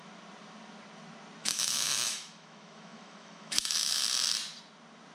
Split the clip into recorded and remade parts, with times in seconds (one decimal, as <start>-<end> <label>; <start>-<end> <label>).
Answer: 0.0-1.4 recorded; 1.4-4.0 remade; 4.0-5.1 recorded